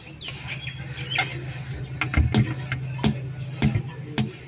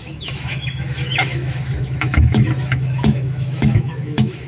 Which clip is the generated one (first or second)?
second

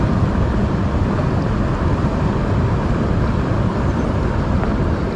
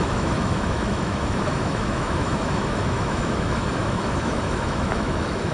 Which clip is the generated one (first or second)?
second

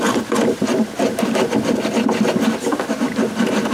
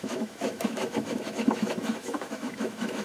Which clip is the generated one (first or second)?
second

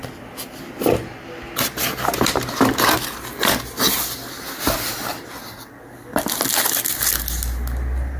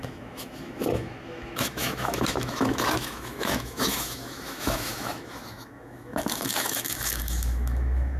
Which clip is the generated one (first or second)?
second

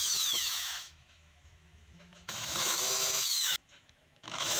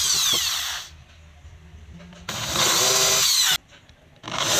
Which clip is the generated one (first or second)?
first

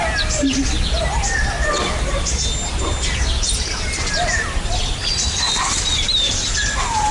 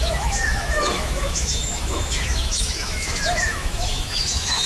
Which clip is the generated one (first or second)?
second